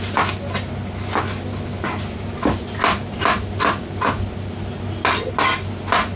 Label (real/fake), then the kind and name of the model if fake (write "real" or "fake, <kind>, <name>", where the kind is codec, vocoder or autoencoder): real